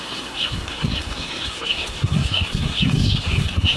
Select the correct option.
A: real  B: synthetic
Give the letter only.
B